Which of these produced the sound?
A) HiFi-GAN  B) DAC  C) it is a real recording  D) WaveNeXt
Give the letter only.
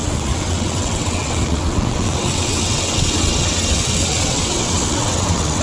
D